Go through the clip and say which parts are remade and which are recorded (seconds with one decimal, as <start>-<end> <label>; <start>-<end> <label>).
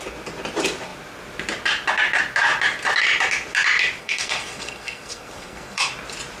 0.0-4.0 recorded; 4.0-5.9 remade; 5.9-6.4 recorded